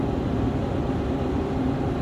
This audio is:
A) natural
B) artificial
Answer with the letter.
A